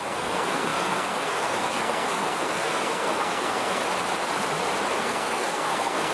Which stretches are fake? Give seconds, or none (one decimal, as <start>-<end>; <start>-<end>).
0.0-3.8; 5.0-6.1